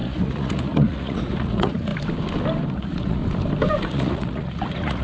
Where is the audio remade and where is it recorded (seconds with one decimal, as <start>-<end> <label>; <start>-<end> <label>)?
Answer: 0.0-1.9 remade; 1.9-2.7 recorded; 2.7-3.2 remade; 3.2-3.8 recorded; 3.8-5.0 remade